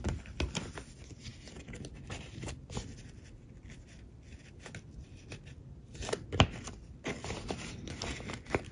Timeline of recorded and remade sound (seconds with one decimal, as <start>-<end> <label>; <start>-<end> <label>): 0.0-8.7 recorded